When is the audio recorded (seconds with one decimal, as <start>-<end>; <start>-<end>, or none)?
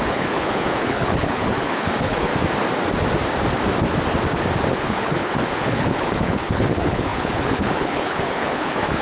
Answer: 2.3-4.7